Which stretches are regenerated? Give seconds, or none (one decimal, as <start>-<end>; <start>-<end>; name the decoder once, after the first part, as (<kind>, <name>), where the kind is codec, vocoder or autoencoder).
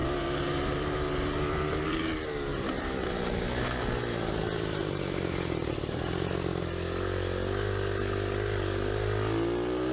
0.0-2.1 (vocoder, BigVGAN v2); 2.5-3.1